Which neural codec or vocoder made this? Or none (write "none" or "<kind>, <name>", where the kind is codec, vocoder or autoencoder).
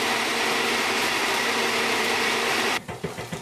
vocoder, BigVGAN v2